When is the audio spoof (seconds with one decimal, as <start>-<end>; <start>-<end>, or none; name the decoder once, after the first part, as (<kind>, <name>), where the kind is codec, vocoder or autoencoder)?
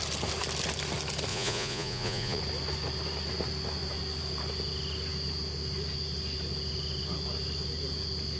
1.3-2.4 (vocoder, Vocos)